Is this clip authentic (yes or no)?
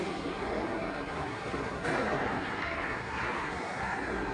no